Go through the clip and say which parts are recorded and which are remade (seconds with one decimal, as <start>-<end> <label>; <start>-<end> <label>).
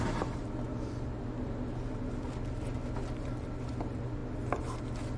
0.0-5.2 recorded